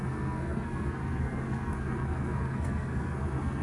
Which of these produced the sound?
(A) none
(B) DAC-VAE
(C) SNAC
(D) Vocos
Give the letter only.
C